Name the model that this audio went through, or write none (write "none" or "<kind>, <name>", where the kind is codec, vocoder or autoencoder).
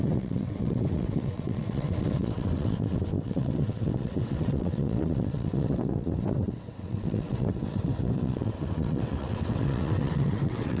vocoder, WaveNeXt